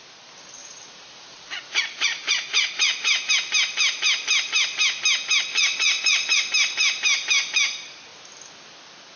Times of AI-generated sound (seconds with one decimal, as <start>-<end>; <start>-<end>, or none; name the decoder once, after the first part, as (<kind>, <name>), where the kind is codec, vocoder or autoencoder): 0.6-3.3 (vocoder, Vocos); 5.5-6.4